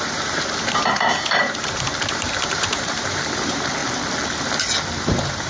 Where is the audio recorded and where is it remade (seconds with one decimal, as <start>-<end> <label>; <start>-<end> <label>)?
0.0-3.8 remade; 3.8-5.1 recorded; 5.1-5.5 remade